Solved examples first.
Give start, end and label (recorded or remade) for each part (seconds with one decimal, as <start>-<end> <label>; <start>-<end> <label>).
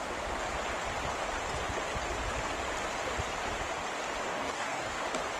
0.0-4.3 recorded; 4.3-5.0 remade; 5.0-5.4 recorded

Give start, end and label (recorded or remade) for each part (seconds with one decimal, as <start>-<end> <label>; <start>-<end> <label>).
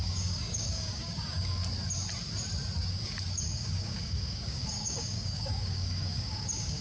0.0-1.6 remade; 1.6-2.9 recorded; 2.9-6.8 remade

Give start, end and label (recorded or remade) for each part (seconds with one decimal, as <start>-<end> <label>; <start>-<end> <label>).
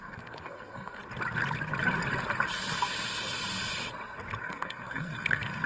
0.0-1.0 remade; 1.0-4.4 recorded; 4.4-5.7 remade